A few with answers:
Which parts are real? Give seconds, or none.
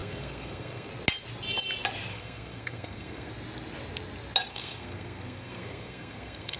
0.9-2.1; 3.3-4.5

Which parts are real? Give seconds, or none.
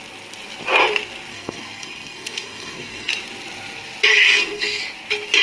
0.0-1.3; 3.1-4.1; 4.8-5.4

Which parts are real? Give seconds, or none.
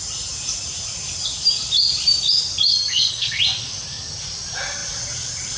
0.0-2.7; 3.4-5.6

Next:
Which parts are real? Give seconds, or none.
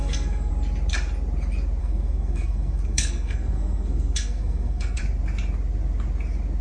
0.5-1.8; 5.0-6.6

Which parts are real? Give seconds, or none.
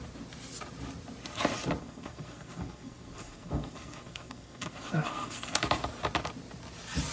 0.0-1.8; 5.6-7.1